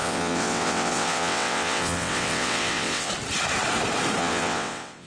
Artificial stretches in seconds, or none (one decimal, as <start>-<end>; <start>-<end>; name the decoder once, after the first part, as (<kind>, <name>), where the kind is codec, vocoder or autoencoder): 0.0-3.1 (vocoder, WaveNeXt); 4.2-5.1